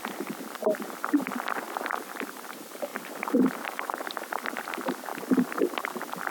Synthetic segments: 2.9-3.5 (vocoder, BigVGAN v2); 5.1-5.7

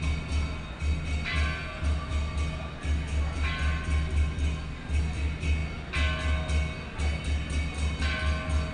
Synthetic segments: none

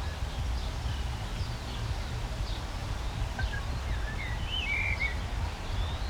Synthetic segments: 2.8-6.1 (vocoder, BigVGAN v2)

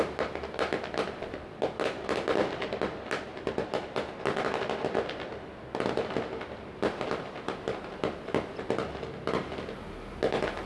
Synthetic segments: 3.3-4.2 (vocoder, BigVGAN v2)

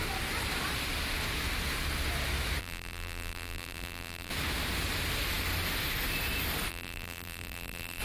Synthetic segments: 2.6-4.3 (vocoder, BigVGAN v2); 6.7-8.0

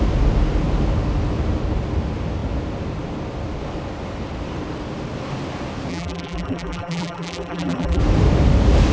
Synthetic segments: 5.9-8.0 (vocoder, BigVGAN v2)

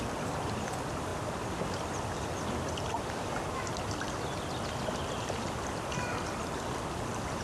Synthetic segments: none

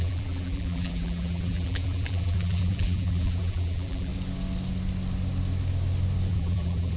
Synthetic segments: 0.0-4.1 (vocoder, BigVGAN v2); 6.3-7.0